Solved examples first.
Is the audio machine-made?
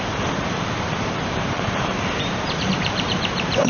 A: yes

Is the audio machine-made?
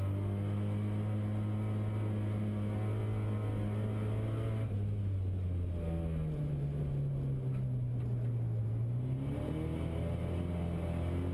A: no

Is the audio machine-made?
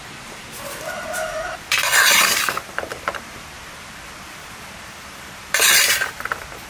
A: yes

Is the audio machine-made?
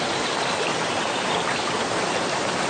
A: yes